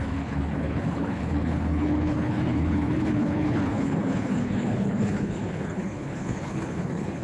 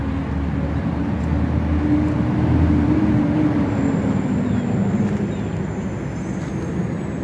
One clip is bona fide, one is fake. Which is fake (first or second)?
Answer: first